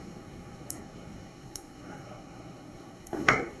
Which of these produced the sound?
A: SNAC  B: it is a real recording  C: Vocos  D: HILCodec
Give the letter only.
A